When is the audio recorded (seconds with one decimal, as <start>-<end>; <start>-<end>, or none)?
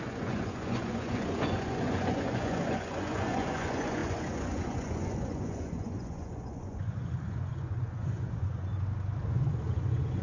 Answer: 8.7-9.3